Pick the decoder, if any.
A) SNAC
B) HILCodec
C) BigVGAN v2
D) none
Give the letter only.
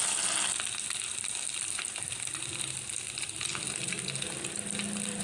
C